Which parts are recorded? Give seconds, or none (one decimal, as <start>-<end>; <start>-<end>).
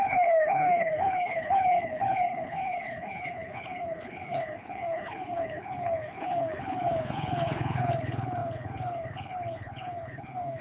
none